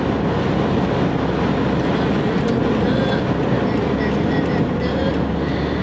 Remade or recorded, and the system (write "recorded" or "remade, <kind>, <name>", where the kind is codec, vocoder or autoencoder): recorded